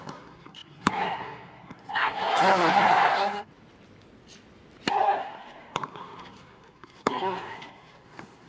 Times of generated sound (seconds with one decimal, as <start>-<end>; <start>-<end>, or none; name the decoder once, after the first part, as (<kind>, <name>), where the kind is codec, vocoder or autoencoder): 0.0-3.5 (codec, SNAC); 4.9-8.5